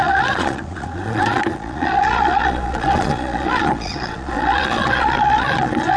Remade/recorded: remade